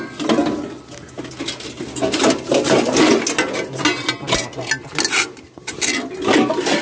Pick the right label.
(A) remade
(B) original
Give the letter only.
B